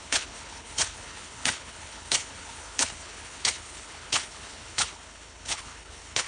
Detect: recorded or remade remade